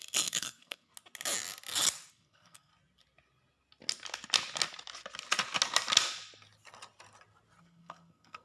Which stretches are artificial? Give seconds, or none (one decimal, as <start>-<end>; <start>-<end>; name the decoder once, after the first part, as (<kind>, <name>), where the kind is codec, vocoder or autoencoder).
0.0-0.9 (codec, SNAC); 2.1-2.7; 7.6-8.4

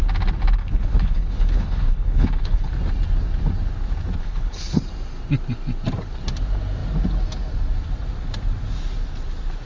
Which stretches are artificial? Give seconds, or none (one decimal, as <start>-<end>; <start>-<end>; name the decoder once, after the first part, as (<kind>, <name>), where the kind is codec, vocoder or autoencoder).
0.6-2.7 (codec, HILCodec); 4.2-4.8